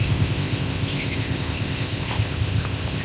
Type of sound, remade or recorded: remade